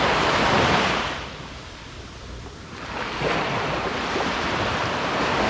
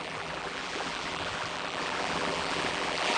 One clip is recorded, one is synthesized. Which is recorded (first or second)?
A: first